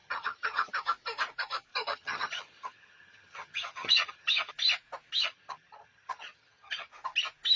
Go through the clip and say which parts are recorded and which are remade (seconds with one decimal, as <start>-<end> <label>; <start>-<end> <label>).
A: 0.0-0.7 remade; 0.7-1.7 recorded; 1.7-4.5 remade; 4.5-5.1 recorded; 5.1-6.9 remade; 6.9-7.6 recorded